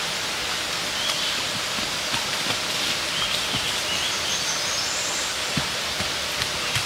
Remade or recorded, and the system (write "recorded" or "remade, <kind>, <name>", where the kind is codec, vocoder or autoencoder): recorded